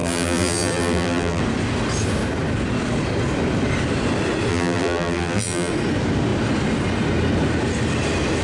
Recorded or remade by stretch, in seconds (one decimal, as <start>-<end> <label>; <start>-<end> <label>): 0.0-1.4 remade; 1.4-4.5 recorded; 4.5-5.7 remade; 5.7-8.4 recorded